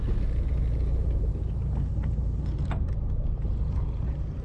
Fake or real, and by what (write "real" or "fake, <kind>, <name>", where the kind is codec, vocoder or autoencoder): real